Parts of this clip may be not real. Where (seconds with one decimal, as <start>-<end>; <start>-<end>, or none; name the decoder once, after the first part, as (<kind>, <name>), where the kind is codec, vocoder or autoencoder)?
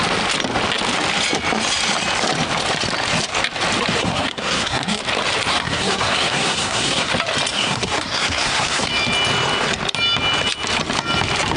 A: 4.0-5.0 (codec, SNAC); 5.5-7.1; 7.5-8.9